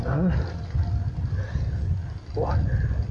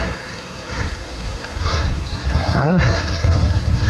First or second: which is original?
first